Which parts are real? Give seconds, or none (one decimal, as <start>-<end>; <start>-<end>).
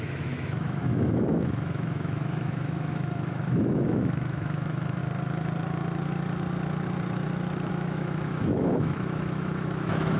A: 5.0-7.7